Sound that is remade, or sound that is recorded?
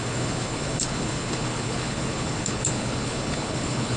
remade